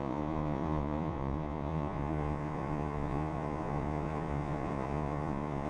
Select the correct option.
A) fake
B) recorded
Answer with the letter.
A